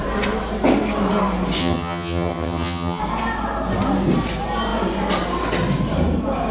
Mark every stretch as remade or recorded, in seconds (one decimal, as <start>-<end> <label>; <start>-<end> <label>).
0.0-1.6 recorded; 1.6-3.0 remade; 3.0-6.5 recorded